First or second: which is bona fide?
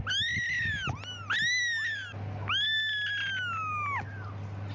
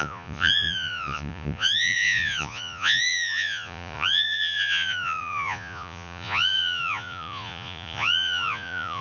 first